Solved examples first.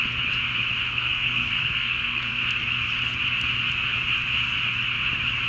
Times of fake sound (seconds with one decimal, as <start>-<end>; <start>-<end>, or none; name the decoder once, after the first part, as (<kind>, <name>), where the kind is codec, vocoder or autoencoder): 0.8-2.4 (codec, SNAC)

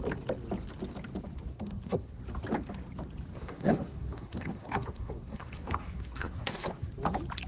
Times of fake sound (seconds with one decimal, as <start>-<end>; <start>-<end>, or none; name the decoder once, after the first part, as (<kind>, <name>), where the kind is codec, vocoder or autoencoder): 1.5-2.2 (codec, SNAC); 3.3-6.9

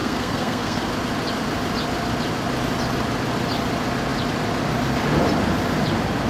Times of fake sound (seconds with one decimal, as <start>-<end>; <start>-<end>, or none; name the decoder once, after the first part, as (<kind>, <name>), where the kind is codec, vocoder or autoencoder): 0.0-0.9 (codec, SNAC)

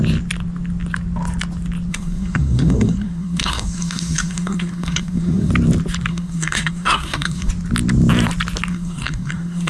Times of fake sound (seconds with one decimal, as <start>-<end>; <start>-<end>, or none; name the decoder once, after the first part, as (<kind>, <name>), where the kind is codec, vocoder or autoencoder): 1.9-5.5 (codec, SNAC); 6.1-7.5; 8.7-9.7

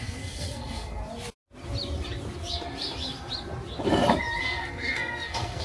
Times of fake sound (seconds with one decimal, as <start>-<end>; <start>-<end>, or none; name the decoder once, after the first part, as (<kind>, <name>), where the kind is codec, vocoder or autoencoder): 0.0-1.0 (codec, SNAC); 4.4-5.6

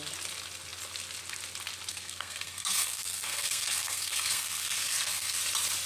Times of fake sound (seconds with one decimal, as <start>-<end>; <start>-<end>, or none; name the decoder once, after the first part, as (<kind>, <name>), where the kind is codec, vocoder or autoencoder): 1.9-5.4 (codec, SNAC)

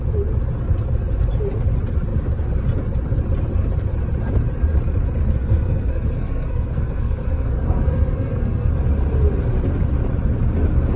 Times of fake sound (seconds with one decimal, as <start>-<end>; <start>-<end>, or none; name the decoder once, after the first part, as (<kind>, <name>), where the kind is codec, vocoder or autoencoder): 5.4-8.7 (codec, SNAC)